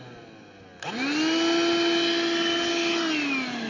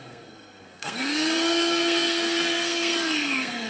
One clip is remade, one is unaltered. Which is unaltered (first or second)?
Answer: first